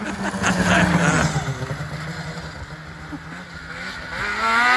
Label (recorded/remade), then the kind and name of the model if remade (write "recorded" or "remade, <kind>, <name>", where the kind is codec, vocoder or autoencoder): recorded